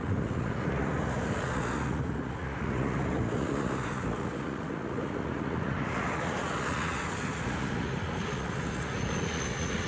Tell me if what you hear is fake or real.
fake